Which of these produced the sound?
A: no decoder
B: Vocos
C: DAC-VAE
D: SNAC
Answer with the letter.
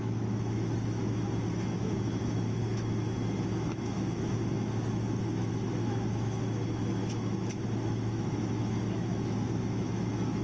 C